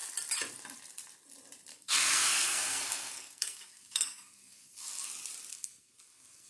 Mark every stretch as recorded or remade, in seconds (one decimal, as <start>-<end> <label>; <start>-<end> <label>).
0.0-1.7 recorded; 1.7-5.1 remade; 5.1-5.5 recorded; 5.5-6.5 remade